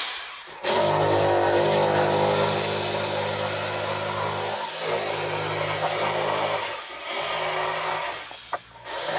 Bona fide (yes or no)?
yes